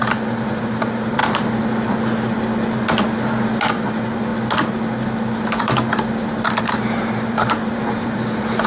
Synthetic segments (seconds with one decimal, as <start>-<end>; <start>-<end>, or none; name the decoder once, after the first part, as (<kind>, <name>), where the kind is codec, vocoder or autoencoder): 0.0-1.2 (vocoder, BigVGAN v2); 3.6-4.3; 6.6-8.7